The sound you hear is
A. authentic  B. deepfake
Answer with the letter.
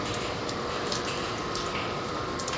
B